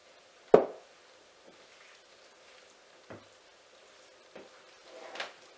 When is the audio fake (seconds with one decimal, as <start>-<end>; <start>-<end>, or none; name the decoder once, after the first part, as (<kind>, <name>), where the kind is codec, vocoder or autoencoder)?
none